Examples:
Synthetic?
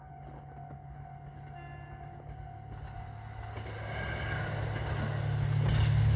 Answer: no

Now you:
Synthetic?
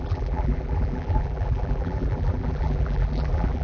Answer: yes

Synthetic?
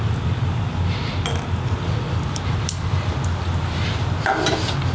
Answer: no